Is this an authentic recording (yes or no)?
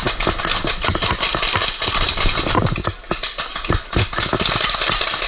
yes